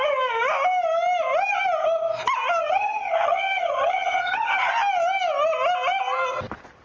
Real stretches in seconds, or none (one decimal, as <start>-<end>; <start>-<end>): 0.0-2.6; 4.7-6.8

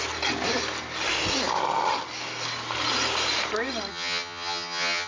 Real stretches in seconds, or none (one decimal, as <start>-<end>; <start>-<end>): 0.0-3.9

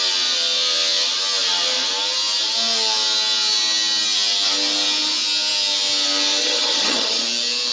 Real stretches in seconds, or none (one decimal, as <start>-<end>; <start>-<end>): 0.0-6.4; 7.2-7.7

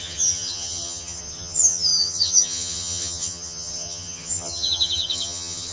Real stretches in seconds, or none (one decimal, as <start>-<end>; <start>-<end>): none

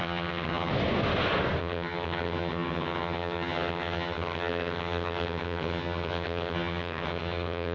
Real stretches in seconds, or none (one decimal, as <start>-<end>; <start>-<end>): 0.7-1.6

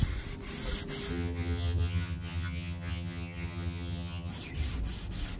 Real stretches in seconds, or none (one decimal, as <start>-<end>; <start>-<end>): 0.0-1.1; 4.3-5.4

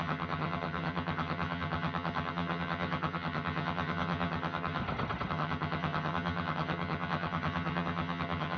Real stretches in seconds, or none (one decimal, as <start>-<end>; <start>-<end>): 4.8-5.3

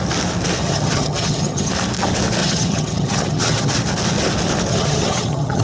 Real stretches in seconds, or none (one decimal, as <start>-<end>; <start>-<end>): 0.0-0.6; 1.7-2.4; 3.7-4.7